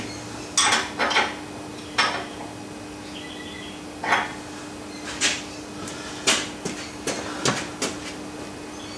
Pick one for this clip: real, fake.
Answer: real